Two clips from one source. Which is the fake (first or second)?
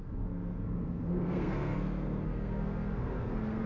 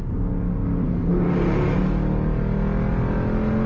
first